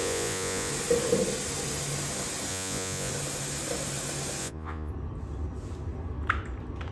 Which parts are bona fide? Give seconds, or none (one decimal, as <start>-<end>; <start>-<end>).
0.7-2.5; 3.1-4.4; 4.9-6.9